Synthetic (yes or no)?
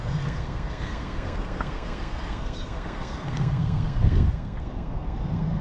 yes